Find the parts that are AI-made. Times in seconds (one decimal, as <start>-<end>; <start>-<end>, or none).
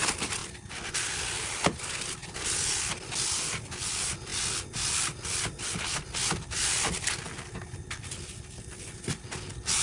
none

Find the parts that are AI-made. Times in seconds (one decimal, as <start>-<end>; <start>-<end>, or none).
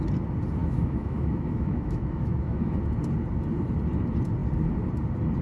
0.6-2.8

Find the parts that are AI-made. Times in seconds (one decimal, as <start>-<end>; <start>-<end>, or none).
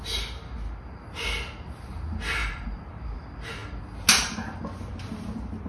2.4-2.9